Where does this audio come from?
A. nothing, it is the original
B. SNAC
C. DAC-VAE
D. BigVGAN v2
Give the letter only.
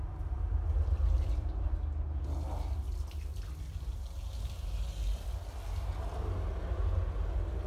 A